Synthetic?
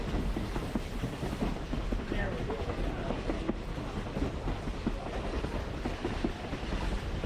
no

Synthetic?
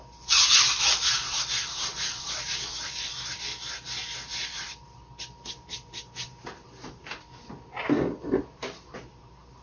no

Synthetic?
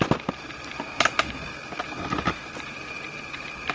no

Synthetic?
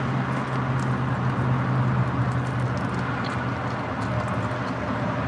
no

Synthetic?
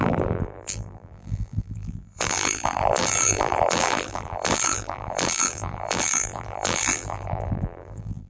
yes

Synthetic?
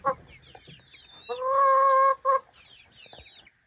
no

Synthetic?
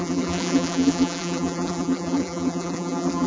yes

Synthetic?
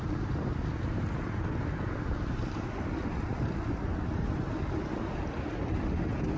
no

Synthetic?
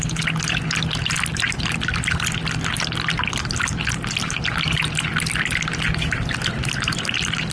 no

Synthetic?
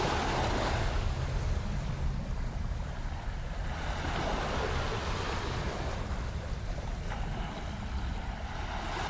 no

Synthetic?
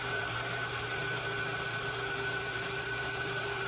yes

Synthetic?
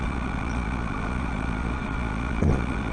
yes